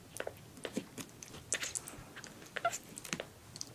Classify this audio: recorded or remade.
recorded